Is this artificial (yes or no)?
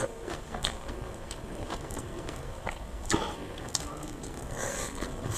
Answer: yes